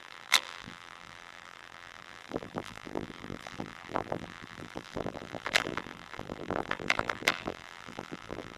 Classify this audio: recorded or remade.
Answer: remade